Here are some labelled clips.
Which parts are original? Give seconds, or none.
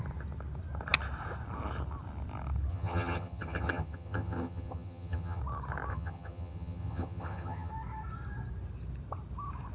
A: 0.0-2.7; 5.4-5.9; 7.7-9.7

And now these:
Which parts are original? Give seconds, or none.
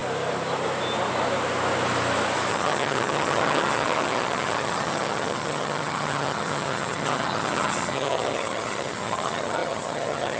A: 0.0-2.5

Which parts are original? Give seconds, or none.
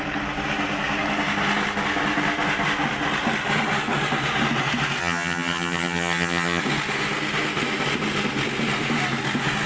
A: 0.0-5.0; 6.6-9.7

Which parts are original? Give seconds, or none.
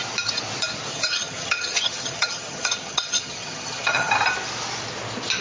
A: 0.0-0.9; 4.1-5.4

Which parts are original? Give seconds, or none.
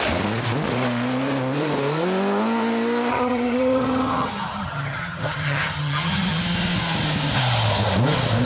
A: 0.0-3.1; 6.4-8.5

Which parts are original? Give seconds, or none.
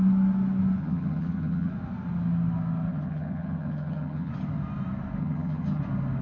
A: 0.0-0.8; 1.7-2.9; 4.3-5.2; 5.8-6.2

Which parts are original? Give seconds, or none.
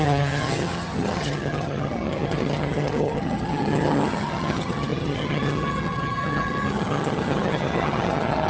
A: none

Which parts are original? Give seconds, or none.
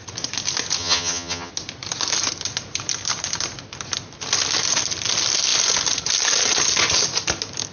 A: 0.0-0.8; 1.5-7.7